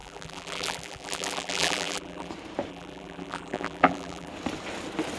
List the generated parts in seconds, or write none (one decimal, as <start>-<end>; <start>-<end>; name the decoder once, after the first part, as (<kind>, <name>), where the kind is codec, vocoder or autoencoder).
0.0-2.3 (vocoder, BigVGAN v2); 2.7-4.3